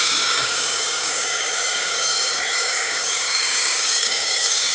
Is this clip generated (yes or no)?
yes